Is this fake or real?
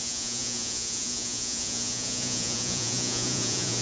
fake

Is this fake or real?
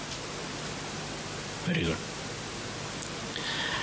real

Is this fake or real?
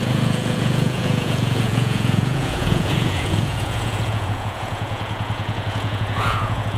fake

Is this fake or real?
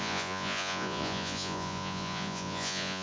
fake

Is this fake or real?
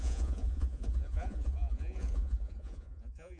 fake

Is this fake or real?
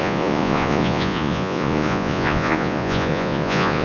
fake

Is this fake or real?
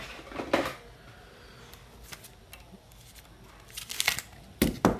real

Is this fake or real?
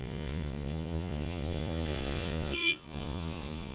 fake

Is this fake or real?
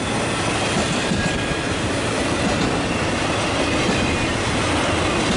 real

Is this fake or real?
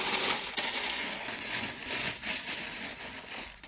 fake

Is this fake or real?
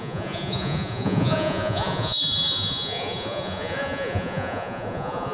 fake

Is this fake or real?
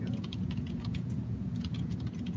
fake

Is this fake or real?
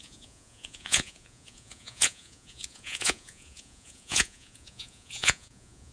fake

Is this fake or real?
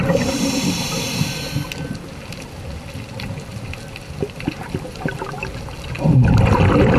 real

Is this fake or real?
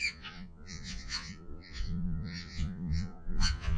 fake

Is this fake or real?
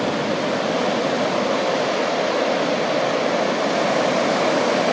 real